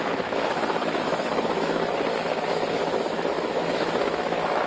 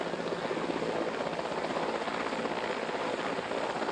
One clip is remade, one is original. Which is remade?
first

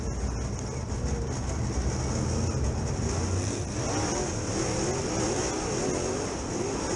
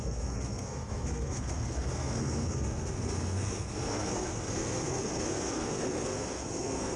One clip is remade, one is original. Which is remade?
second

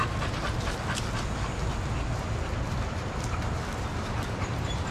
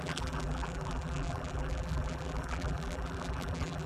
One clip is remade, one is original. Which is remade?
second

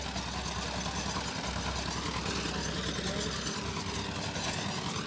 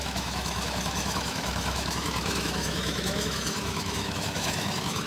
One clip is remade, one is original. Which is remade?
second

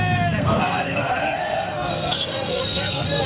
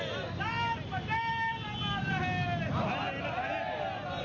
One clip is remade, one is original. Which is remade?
first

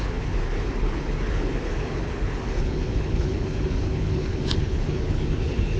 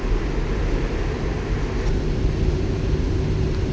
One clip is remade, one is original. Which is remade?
first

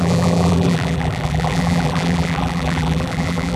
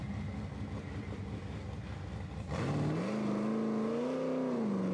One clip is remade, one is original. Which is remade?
first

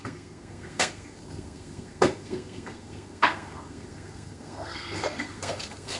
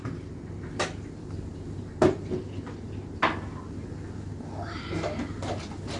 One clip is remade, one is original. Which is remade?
first